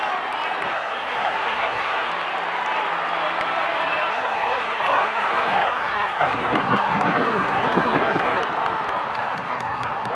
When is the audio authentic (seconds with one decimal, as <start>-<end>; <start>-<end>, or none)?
0.0-0.7; 2.1-4.1; 8.4-9.1